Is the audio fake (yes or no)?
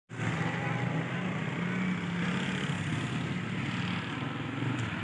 no